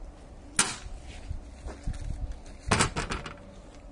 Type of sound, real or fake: real